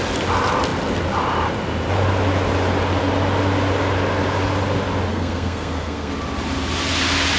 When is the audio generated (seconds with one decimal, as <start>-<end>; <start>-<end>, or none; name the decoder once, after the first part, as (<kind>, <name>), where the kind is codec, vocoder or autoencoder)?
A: 5.1-6.1 (codec, SNAC)